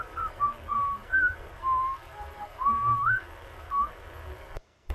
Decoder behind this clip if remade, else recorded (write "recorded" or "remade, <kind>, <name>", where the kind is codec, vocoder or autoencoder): remade, codec, SNAC